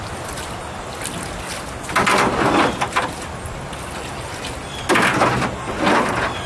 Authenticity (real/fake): real